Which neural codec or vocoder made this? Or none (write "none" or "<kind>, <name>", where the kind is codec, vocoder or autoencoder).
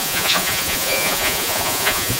vocoder, Vocos